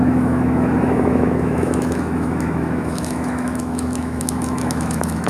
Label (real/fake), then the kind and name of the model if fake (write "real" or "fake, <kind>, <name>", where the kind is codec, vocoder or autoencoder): fake, autoencoder, DAC-VAE